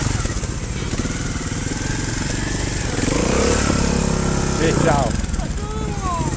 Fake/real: real